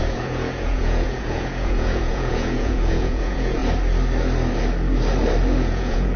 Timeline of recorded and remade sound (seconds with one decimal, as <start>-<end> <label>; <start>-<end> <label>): 0.0-3.6 remade; 3.6-5.7 recorded; 5.7-6.2 remade